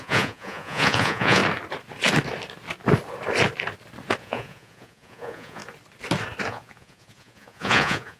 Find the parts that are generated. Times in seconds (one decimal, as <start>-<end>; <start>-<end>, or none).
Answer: 0.0-1.4; 4.2-5.6; 6.5-8.2